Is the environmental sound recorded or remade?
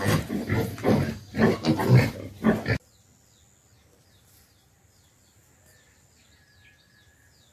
recorded